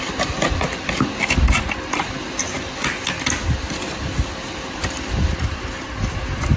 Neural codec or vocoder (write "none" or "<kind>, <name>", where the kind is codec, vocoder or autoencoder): none